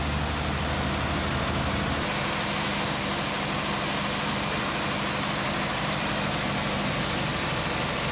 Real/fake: real